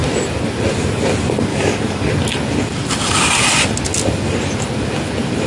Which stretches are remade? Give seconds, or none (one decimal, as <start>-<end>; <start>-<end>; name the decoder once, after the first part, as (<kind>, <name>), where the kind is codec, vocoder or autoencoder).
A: 1.5-2.1 (codec, DAC)